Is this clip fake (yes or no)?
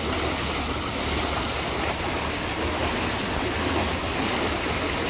no